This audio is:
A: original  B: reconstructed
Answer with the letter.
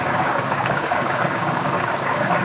B